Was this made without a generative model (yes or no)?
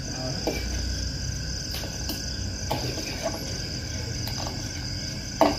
yes